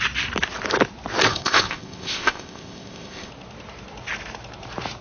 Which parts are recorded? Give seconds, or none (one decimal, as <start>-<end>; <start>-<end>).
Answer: 0.0-1.3; 3.3-5.0